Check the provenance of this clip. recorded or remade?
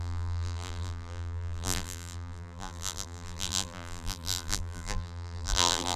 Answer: remade